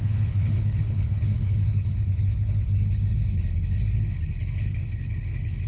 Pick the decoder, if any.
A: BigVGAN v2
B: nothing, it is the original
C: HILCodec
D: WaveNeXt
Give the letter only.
C